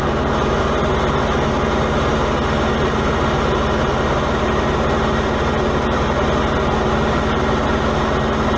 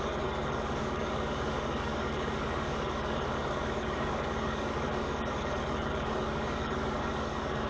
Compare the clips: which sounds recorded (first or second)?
first